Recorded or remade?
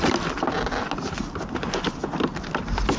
recorded